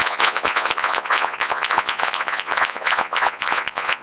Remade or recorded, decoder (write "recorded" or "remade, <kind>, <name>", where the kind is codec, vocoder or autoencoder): remade, vocoder, Vocos